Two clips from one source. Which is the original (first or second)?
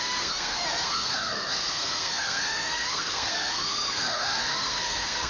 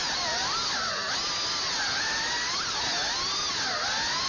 second